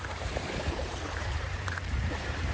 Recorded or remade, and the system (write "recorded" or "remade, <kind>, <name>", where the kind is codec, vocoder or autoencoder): remade, vocoder, BigVGAN v2